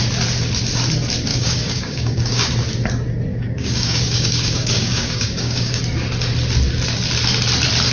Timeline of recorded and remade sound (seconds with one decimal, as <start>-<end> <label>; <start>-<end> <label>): 0.0-1.3 recorded; 1.3-2.5 remade; 2.5-3.3 recorded; 3.3-5.8 remade; 5.8-7.9 recorded